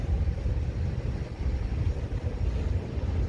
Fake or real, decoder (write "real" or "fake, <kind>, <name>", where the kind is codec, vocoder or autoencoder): real